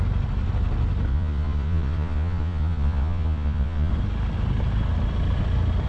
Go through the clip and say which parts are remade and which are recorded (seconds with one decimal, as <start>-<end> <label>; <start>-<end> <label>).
0.0-1.1 recorded; 1.1-3.9 remade; 3.9-5.9 recorded